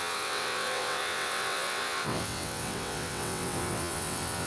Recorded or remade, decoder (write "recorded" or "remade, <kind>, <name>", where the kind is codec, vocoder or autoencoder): remade, vocoder, WaveNeXt